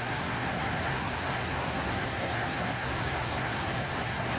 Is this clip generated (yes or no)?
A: yes